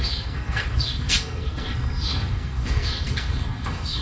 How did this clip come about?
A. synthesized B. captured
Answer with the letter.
A